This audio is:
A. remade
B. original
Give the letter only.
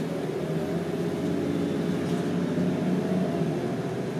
B